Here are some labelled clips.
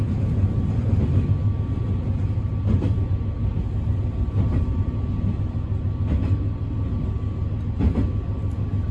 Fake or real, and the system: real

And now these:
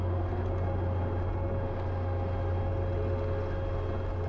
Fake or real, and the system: real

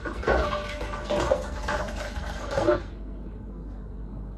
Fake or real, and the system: fake, codec, SNAC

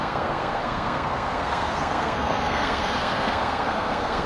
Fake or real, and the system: fake, codec, SNAC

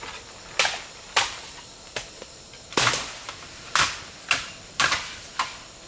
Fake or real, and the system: real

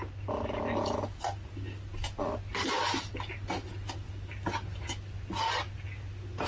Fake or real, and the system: real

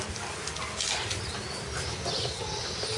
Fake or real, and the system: real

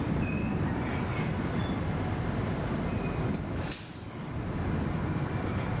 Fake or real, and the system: real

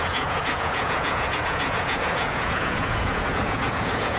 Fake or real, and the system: fake, vocoder, Vocos